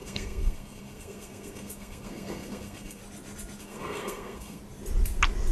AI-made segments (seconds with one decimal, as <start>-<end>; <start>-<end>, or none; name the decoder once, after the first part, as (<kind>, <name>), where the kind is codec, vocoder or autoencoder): 0.0-3.0 (codec, SNAC); 3.6-4.6